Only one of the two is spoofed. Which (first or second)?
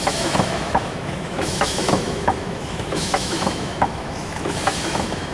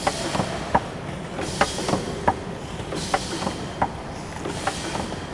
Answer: first